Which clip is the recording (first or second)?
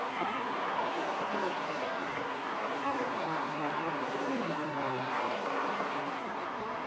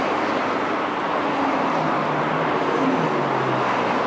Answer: second